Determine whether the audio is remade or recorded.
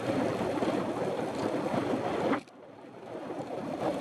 recorded